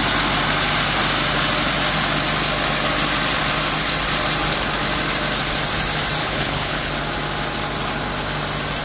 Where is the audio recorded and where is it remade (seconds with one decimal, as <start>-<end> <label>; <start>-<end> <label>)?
0.0-6.2 recorded; 6.2-6.9 remade; 6.9-8.8 recorded

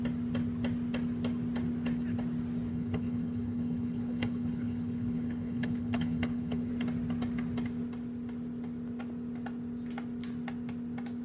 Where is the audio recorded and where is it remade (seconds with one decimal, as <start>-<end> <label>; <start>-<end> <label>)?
0.0-2.7 recorded; 2.7-6.7 remade; 6.7-11.2 recorded

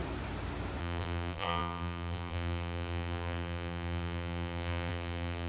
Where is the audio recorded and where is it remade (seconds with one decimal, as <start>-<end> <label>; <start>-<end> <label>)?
0.0-0.8 recorded; 0.8-5.5 remade

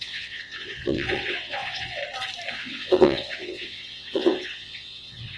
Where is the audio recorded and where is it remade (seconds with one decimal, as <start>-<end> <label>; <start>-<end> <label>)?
0.0-2.0 remade; 2.0-2.5 recorded; 2.5-5.4 remade

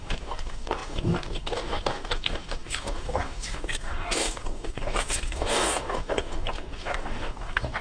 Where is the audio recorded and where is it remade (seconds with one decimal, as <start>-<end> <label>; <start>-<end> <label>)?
0.0-7.8 remade

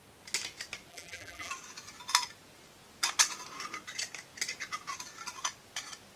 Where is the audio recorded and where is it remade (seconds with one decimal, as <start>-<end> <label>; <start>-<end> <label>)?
0.0-0.9 recorded; 0.9-1.5 remade; 1.5-6.2 recorded

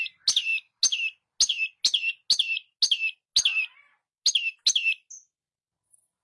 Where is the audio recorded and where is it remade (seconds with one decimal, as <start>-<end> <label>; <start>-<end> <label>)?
0.0-6.2 recorded